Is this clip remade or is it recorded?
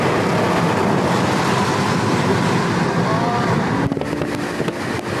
recorded